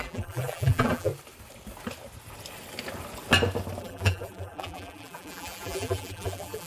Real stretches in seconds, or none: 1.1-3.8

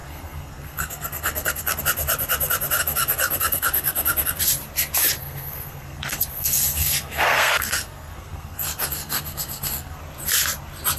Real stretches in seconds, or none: 1.8-2.8; 4.4-5.2; 10.0-11.0

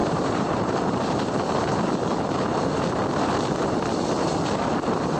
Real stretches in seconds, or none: 1.3-5.2

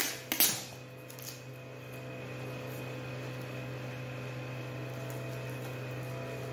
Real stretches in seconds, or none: 0.0-6.5